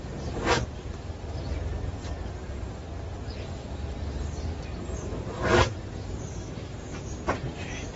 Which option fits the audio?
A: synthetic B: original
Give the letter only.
A